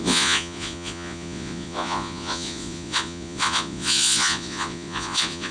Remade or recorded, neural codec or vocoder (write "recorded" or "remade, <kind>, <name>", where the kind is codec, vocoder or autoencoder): remade, vocoder, Vocos